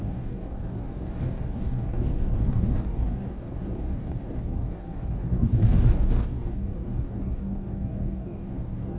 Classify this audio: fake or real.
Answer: fake